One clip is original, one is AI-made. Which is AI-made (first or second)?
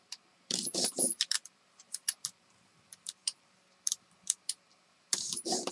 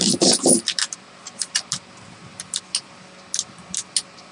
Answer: first